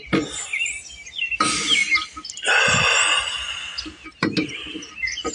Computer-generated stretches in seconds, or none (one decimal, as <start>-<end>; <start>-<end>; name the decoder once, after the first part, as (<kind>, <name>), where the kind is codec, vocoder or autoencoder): none